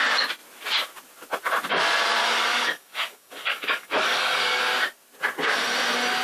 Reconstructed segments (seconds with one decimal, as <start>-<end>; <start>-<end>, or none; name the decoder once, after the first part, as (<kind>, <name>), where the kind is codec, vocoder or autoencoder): 2.2-4.6 (codec, DAC)